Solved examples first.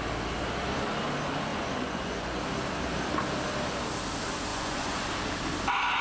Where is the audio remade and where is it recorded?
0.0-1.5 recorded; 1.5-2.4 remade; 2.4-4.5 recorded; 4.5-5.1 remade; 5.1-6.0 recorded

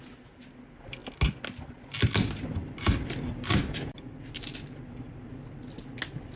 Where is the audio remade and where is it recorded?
0.0-6.4 recorded